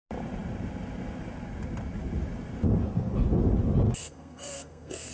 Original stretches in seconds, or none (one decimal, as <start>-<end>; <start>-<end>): 0.0-4.0